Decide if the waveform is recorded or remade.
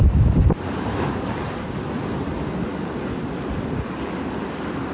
recorded